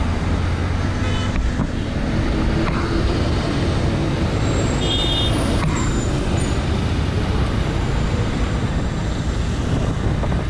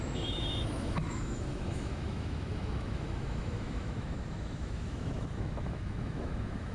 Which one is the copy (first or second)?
second